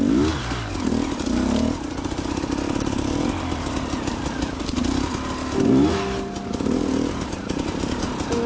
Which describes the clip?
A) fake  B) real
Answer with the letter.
B